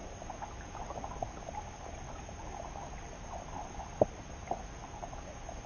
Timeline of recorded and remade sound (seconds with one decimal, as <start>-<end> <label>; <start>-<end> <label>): 0.0-5.7 recorded